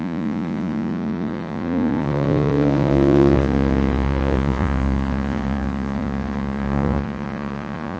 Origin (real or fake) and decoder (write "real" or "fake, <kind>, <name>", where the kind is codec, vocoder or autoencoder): fake, vocoder, Vocos